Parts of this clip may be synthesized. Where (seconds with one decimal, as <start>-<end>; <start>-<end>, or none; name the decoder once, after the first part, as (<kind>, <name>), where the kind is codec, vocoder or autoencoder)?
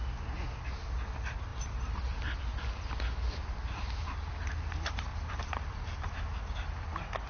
1.5-2.9 (vocoder, BigVGAN v2); 5.1-6.1